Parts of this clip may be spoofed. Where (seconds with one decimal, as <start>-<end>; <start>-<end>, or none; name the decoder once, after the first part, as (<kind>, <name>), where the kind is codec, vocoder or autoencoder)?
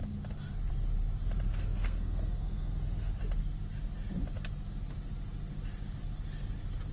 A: 1.5-3.1 (codec, SNAC)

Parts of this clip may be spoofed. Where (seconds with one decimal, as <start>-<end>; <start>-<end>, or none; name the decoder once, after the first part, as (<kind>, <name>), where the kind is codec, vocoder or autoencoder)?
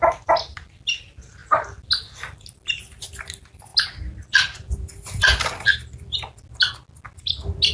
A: none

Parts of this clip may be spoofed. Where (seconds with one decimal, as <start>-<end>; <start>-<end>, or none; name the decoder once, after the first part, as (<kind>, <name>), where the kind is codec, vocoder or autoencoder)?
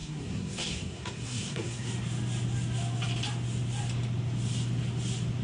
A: 0.0-1.9 (codec, SNAC)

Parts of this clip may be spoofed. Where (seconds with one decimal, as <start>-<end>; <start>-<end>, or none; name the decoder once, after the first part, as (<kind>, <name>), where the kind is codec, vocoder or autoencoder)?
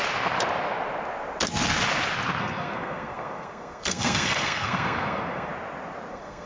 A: 2.4-5.5 (codec, SNAC); 6.1-6.5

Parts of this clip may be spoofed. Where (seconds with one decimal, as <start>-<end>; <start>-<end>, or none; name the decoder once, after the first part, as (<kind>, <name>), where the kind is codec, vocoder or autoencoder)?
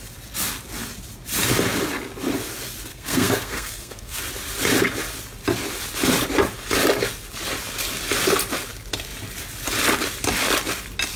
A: 2.9-4.2 (codec, SNAC)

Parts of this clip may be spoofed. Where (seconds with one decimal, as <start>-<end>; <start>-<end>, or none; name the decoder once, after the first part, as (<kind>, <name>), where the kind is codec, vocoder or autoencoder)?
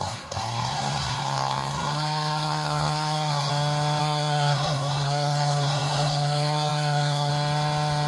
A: 0.0-3.5 (codec, SNAC); 4.0-7.3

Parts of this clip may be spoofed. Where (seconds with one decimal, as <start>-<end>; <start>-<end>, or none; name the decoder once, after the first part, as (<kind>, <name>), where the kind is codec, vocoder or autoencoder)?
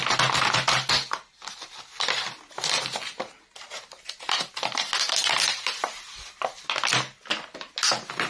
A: none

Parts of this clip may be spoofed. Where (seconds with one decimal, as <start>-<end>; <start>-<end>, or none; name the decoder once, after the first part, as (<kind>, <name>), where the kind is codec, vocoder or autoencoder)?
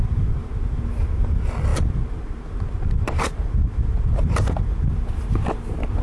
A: none